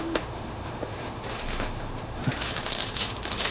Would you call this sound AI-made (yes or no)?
yes